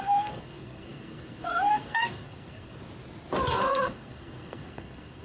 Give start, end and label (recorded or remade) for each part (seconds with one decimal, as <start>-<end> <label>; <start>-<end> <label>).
0.0-2.8 remade; 2.8-3.5 recorded; 3.5-5.2 remade